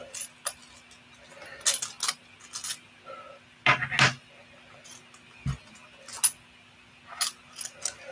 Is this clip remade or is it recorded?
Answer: recorded